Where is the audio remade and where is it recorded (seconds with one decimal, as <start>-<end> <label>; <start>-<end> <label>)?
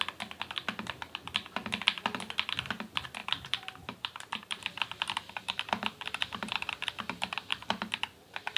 0.0-3.2 recorded; 3.2-7.5 remade; 7.5-8.6 recorded